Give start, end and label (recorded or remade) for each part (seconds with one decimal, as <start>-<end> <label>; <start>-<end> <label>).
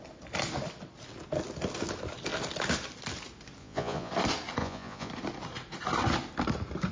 0.0-3.6 recorded; 3.6-4.1 remade; 4.1-4.6 recorded; 4.6-5.1 remade; 5.1-6.9 recorded